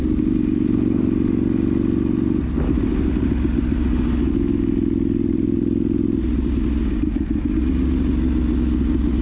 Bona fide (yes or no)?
yes